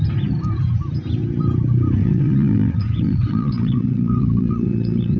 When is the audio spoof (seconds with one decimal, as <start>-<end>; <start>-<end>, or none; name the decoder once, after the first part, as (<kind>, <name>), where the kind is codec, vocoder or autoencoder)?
2.0-5.2 (vocoder, WaveNeXt)